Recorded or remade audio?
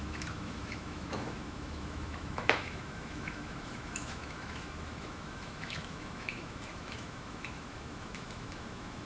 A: remade